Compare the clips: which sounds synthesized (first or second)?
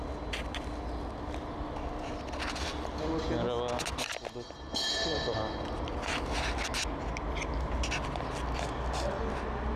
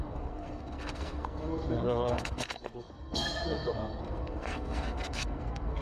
second